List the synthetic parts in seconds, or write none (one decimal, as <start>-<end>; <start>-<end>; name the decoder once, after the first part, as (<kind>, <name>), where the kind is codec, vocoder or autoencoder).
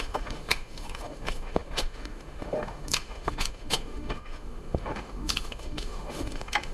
0.0-6.7 (autoencoder, DAC-VAE)